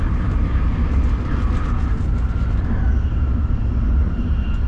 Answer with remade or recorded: recorded